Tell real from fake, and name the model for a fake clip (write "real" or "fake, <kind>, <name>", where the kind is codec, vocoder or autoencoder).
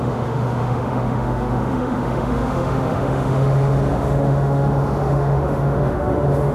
fake, autoencoder, DAC-VAE